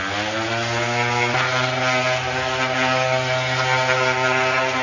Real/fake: real